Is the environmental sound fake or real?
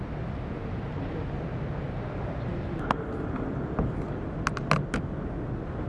real